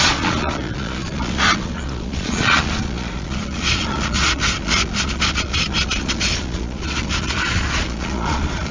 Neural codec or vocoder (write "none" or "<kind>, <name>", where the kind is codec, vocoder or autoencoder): vocoder, Vocos